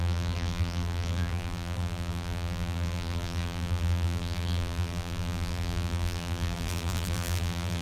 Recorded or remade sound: remade